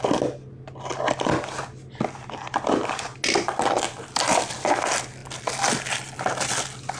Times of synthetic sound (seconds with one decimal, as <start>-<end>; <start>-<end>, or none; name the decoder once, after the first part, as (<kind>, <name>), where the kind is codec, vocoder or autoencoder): none